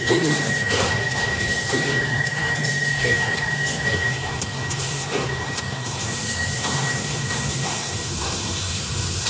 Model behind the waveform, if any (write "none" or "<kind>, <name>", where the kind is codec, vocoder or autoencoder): codec, SNAC